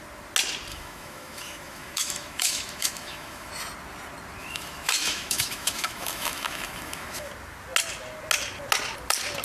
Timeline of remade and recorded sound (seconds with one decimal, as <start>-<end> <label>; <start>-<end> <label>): 0.0-0.7 recorded; 0.7-3.5 remade; 3.5-4.4 recorded; 4.4-7.3 remade; 7.3-9.4 recorded